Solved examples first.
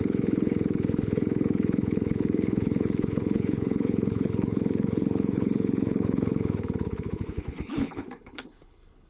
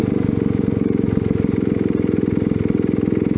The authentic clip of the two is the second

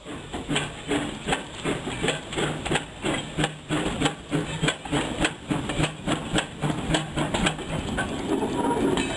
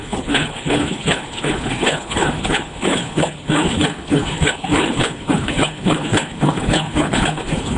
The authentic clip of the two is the first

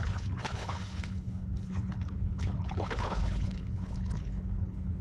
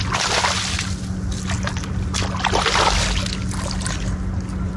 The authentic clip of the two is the second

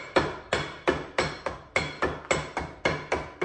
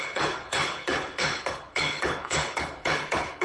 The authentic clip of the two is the first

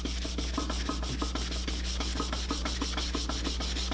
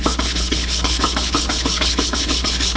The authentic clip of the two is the first